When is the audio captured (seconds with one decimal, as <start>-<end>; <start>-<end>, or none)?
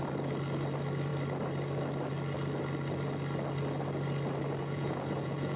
0.0-4.6